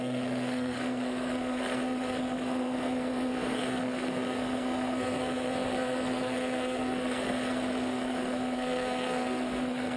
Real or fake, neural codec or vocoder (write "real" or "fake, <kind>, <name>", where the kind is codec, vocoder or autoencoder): fake, codec, SNAC